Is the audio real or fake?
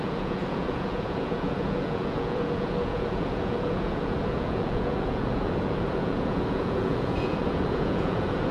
fake